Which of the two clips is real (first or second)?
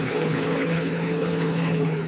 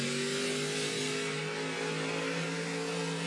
second